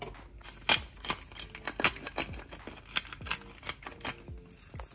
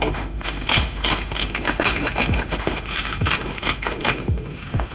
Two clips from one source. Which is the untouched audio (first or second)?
first